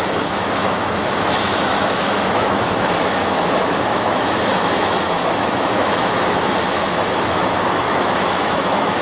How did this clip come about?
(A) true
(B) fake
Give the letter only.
B